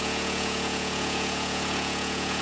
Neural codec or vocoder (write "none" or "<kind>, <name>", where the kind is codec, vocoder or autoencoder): vocoder, Vocos